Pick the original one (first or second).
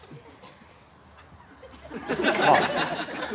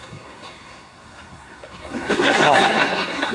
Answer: first